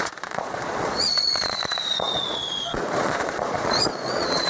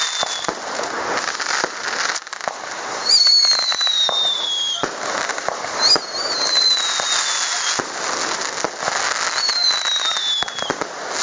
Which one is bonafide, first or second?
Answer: second